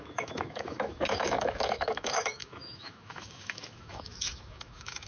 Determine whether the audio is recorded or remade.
remade